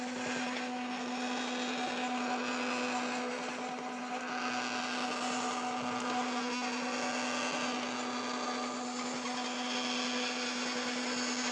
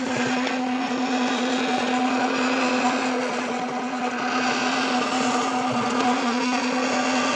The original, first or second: first